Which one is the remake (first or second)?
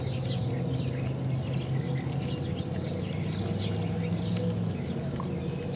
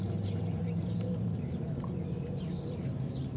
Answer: second